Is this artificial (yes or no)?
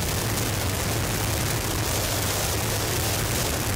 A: no